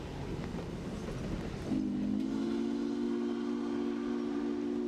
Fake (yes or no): no